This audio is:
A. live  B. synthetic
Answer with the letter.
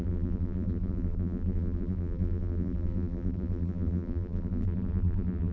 B